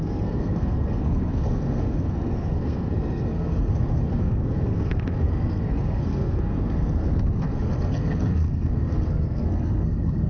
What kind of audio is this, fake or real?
fake